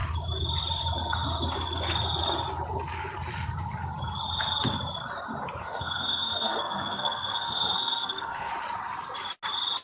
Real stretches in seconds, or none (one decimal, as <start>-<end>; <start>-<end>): 0.0-5.6; 8.5-9.8